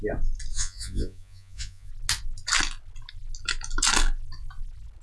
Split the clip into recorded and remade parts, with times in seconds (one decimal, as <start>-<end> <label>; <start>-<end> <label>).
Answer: 0.0-0.5 recorded; 0.5-1.9 remade; 1.9-5.0 recorded